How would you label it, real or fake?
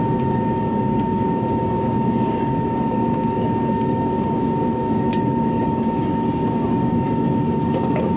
fake